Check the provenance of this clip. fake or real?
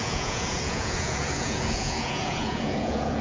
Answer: fake